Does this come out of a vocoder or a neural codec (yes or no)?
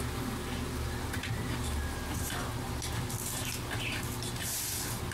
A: no